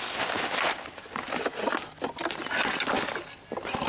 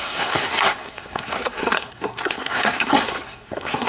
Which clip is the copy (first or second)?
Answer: second